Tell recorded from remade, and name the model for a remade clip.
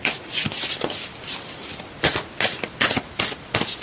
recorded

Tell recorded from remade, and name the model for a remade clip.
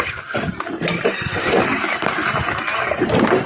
recorded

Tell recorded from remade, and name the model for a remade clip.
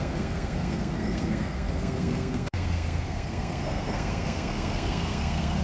remade, codec, SNAC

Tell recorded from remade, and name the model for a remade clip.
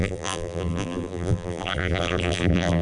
remade, vocoder, BigVGAN v2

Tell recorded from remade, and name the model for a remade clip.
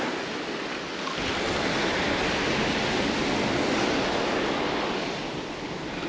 recorded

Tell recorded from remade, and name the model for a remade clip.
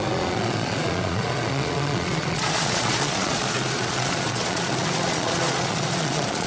remade, vocoder, Vocos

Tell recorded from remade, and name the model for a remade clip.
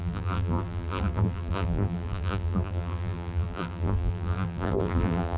remade, vocoder, BigVGAN v2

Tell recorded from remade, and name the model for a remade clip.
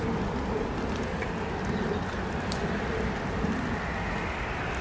recorded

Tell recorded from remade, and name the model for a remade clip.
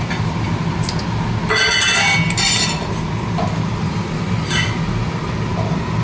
recorded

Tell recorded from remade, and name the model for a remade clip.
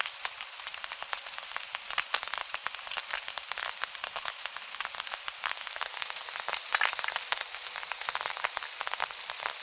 recorded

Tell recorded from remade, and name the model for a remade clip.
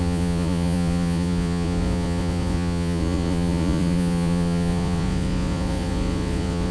remade, vocoder, Vocos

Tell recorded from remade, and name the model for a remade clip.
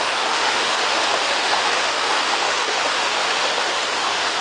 remade, autoencoder, DAC-VAE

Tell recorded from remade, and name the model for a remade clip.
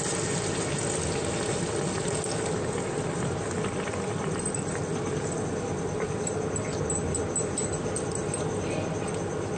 recorded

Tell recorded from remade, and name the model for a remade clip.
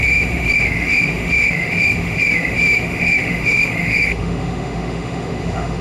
remade, autoencoder, DAC-VAE